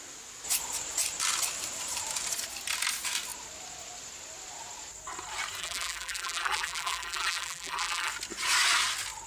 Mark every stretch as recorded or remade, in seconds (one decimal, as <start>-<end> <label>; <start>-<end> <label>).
0.0-5.6 recorded; 5.6-8.1 remade; 8.1-9.3 recorded